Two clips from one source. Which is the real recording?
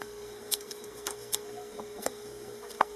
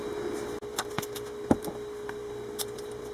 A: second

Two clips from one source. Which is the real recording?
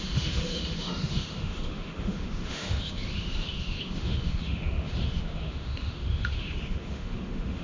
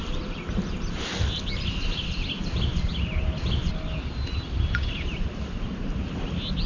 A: second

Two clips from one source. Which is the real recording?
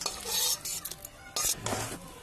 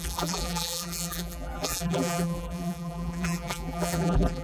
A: first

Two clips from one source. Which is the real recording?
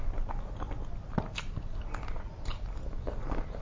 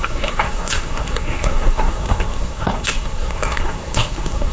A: first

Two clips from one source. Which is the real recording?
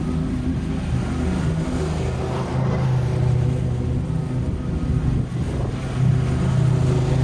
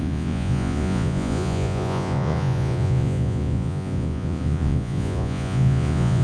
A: first